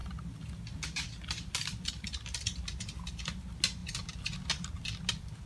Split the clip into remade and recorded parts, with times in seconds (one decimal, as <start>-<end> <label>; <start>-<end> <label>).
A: 0.0-5.5 recorded